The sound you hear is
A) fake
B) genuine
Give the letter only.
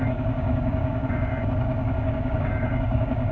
A